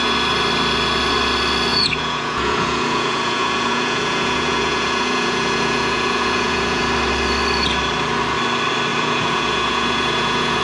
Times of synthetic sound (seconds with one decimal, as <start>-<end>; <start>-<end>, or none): 1.7-6.8; 8.9-10.6